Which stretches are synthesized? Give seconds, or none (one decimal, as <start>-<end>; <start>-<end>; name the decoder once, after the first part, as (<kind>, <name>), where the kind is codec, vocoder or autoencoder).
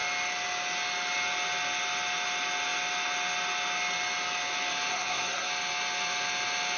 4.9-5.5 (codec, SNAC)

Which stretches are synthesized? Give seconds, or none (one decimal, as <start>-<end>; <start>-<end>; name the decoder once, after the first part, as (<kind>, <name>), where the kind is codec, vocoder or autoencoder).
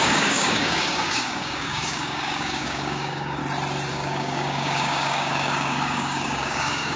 0.0-3.4 (codec, DAC); 3.9-7.0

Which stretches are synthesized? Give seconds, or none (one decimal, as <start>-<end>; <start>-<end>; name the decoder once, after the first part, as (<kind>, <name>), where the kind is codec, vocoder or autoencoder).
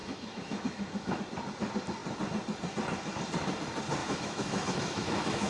0.0-1.2 (autoencoder, DAC-VAE); 4.0-5.5